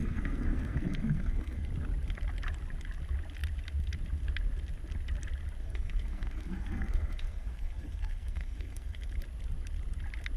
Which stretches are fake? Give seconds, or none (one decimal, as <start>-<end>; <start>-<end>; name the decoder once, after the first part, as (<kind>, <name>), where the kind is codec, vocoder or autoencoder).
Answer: 0.0-1.7 (codec, SNAC); 5.6-9.1